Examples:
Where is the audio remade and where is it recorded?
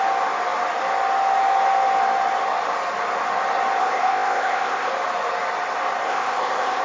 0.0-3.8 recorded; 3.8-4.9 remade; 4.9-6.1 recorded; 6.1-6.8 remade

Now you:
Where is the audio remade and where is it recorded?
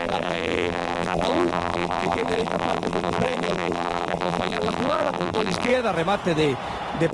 0.0-5.7 remade; 5.7-7.1 recorded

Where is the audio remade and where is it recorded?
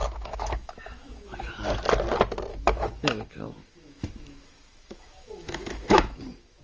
0.0-1.5 remade; 1.5-2.5 recorded; 2.5-6.6 remade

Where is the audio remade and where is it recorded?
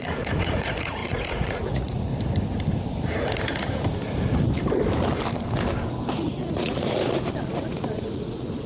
0.0-2.1 remade; 2.1-6.1 recorded; 6.1-8.7 remade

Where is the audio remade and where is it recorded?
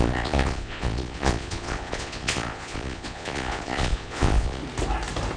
0.0-4.6 remade; 4.6-5.4 recorded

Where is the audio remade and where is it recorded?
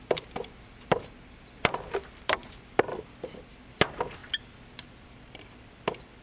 0.0-6.2 recorded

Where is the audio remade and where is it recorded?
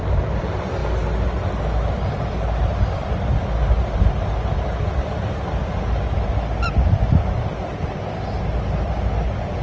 0.0-9.6 recorded